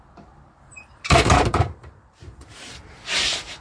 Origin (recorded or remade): remade